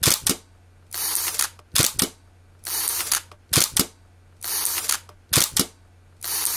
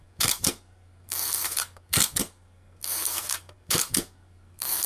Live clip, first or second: first